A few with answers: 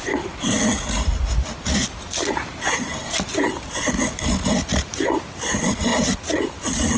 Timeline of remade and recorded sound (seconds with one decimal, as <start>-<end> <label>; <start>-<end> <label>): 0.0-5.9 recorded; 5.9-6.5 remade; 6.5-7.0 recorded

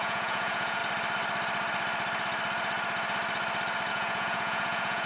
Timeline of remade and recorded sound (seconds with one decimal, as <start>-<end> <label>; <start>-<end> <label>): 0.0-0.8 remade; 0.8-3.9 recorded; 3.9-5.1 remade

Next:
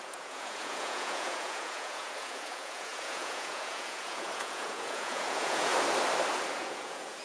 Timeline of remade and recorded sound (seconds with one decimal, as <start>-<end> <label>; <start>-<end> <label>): 0.0-5.7 remade; 5.7-6.5 recorded; 6.5-7.2 remade

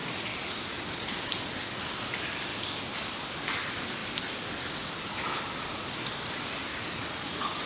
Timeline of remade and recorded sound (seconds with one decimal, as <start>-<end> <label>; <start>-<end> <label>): 0.0-6.7 recorded; 6.7-7.7 remade